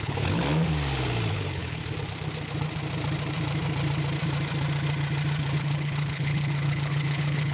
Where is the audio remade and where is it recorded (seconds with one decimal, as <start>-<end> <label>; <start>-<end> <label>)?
0.0-0.4 remade; 0.4-1.3 recorded; 1.3-1.8 remade; 1.8-5.6 recorded; 5.6-7.5 remade